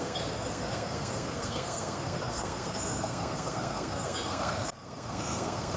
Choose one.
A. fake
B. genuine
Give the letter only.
A